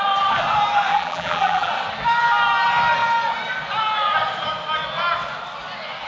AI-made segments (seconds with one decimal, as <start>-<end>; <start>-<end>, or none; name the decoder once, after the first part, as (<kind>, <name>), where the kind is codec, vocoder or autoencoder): 0.9-1.7 (vocoder, BigVGAN v2)